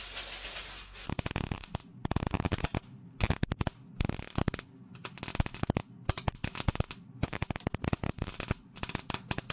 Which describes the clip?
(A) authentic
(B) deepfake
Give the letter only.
A